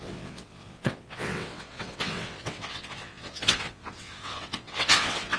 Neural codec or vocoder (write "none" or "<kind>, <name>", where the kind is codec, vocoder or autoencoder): vocoder, WaveNeXt